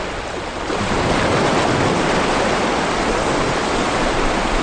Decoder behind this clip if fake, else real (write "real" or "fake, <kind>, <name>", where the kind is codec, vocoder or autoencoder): real